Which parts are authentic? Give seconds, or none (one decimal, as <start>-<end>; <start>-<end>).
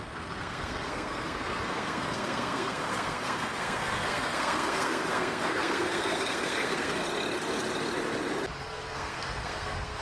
7.0-8.6